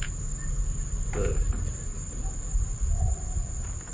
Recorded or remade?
recorded